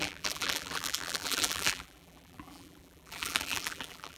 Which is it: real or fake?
fake